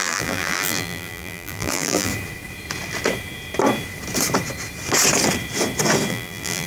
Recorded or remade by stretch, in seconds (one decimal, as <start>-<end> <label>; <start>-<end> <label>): 0.0-2.1 remade; 2.1-6.1 recorded; 6.1-6.7 remade